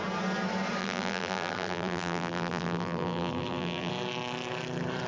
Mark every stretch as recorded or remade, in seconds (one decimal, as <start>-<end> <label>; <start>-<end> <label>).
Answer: 0.0-0.8 recorded; 0.8-3.9 remade; 3.9-5.1 recorded